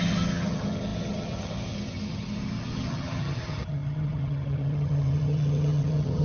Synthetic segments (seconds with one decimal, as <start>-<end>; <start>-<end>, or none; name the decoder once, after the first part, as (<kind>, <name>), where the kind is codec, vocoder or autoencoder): 0.0-6.2 (vocoder, HiFi-GAN)